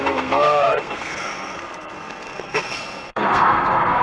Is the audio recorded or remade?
remade